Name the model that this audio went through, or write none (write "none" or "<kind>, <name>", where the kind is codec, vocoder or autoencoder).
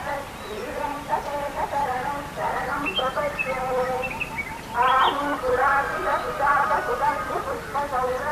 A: none